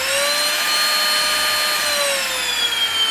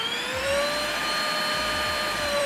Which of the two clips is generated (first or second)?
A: second